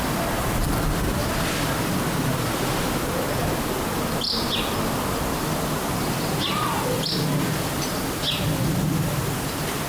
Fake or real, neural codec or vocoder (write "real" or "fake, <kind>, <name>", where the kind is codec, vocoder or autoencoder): real